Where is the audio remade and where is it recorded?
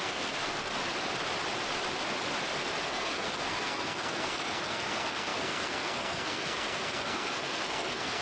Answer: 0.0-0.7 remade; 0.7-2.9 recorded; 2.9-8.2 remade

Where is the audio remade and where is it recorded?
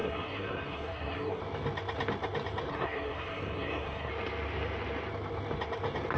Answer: 0.0-1.4 remade; 1.4-2.7 recorded; 2.7-4.1 remade; 4.1-6.2 recorded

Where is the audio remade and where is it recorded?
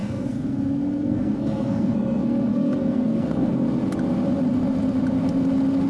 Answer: 0.0-3.5 remade; 3.5-5.9 recorded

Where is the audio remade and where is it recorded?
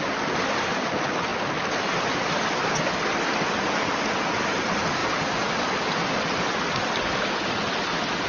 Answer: 0.0-8.3 recorded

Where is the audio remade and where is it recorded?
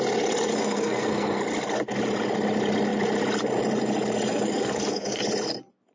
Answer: 0.0-0.5 recorded; 0.5-1.4 remade; 1.4-4.3 recorded; 4.3-5.2 remade; 5.2-5.9 recorded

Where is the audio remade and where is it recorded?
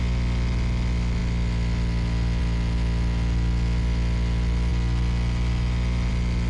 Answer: 0.0-6.5 recorded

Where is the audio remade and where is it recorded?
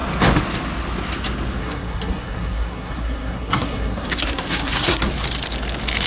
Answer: 0.0-1.6 recorded; 1.6-5.1 remade; 5.1-6.1 recorded